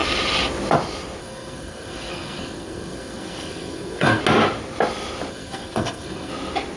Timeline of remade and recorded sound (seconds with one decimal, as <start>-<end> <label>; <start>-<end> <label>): 0.0-1.2 recorded; 1.2-4.2 remade; 4.2-5.3 recorded; 5.3-6.3 remade; 6.3-6.8 recorded